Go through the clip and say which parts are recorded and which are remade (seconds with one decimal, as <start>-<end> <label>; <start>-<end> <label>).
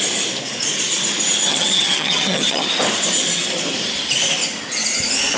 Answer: 0.0-1.5 recorded; 1.5-2.7 remade; 2.7-5.4 recorded